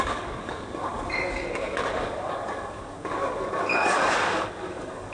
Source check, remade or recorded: remade